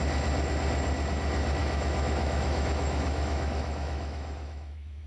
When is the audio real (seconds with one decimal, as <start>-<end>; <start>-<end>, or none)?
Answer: 0.0-1.6

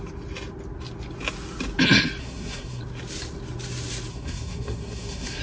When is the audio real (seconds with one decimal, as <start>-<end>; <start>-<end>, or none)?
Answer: 0.0-2.2; 2.8-4.1

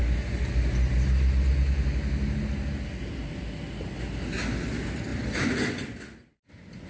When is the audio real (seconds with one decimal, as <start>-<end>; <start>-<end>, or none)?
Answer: 0.0-6.9